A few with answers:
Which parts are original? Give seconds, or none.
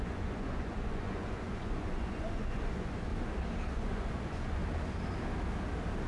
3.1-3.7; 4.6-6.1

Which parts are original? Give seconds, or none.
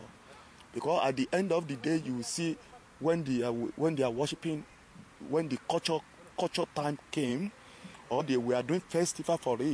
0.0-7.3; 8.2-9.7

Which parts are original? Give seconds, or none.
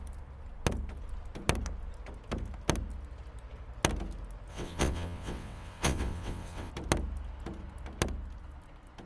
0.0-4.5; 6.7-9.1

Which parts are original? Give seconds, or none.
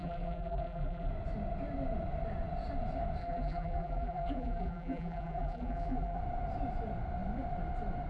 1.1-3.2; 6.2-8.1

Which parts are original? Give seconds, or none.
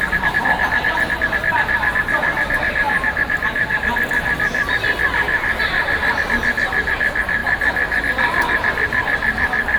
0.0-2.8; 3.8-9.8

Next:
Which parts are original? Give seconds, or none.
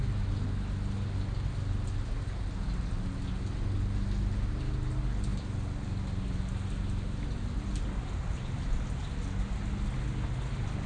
0.0-10.9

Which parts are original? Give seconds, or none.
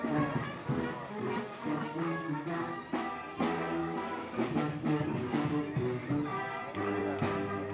0.0-0.6; 2.8-3.8; 5.6-7.7